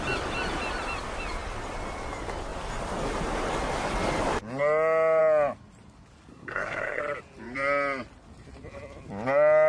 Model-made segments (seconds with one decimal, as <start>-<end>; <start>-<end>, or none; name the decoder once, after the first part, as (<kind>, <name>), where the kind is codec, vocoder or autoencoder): 6.3-7.0 (codec, SNAC)